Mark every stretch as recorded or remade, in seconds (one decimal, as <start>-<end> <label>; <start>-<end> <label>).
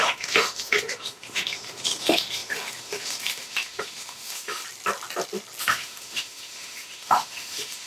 0.0-4.6 remade; 4.6-5.6 recorded; 5.6-7.9 remade